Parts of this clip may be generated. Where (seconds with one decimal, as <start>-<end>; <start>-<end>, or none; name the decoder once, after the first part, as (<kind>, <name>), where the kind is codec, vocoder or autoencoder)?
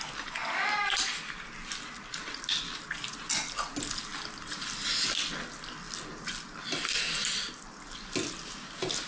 none